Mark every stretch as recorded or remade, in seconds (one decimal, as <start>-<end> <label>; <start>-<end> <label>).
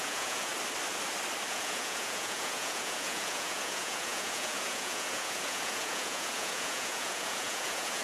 0.0-0.5 remade; 0.5-1.5 recorded; 1.5-8.0 remade